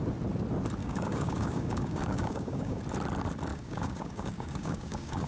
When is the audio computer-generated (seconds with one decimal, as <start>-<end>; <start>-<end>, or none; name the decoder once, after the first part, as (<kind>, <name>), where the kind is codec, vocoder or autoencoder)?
0.8-2.8 (codec, DAC); 3.5-5.3